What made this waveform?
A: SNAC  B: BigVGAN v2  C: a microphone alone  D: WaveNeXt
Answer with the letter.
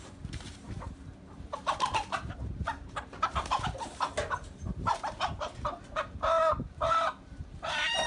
B